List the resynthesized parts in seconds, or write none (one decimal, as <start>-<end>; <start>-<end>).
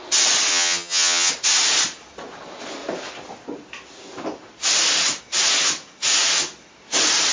0.5-1.3